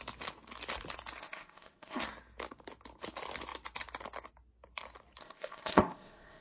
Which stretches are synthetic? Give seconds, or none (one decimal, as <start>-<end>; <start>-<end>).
1.2-2.0; 5.2-6.4